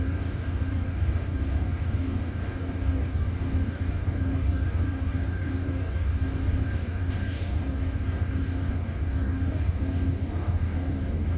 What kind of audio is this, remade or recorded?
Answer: remade